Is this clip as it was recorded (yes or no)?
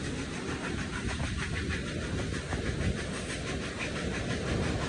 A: yes